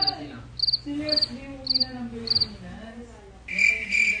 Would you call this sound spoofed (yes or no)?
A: no